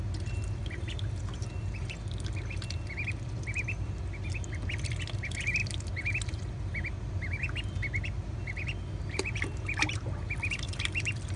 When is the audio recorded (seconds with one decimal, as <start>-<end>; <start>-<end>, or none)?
0.0-11.4